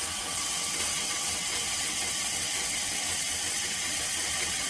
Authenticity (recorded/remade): remade